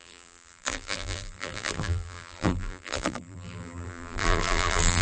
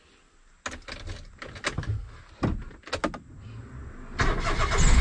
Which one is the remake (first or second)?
first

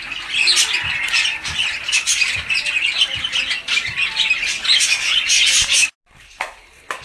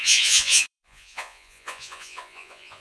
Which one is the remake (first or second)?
second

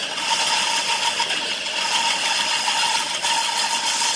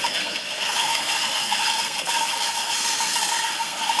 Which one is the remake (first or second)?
second